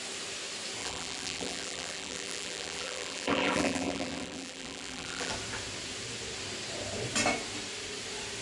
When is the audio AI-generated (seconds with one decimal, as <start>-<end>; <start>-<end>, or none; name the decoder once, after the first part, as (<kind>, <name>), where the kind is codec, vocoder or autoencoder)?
0.8-5.3 (vocoder, BigVGAN v2)

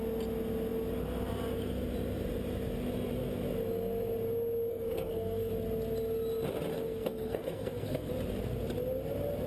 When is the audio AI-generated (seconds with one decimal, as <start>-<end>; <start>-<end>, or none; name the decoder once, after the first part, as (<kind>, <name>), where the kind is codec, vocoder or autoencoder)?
4.7-5.5 (codec, SNAC); 6.7-8.1

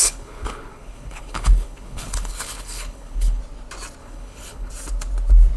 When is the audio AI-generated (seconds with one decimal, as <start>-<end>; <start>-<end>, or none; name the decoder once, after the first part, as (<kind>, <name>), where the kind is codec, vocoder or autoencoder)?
0.0-3.4 (codec, HILCodec); 4.0-4.7

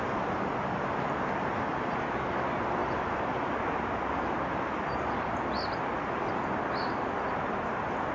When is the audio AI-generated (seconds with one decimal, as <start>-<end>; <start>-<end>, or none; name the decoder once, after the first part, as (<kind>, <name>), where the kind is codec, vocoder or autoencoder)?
none

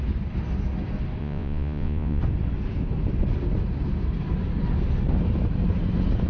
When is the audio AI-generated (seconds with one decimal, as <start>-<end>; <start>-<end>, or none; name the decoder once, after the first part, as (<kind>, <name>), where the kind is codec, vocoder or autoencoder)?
1.2-2.2 (vocoder, Vocos)

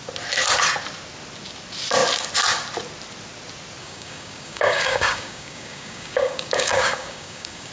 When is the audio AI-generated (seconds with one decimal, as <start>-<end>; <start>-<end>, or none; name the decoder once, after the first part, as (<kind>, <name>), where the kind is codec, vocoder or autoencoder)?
3.8-7.7 (codec, DAC)

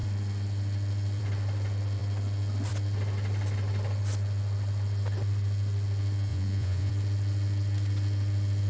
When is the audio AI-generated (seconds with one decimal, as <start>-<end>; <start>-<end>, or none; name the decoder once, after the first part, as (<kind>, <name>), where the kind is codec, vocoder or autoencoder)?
6.3-6.9 (vocoder, Vocos)